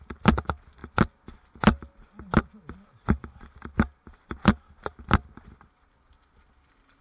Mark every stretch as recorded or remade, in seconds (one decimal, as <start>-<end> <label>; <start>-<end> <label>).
0.0-7.0 recorded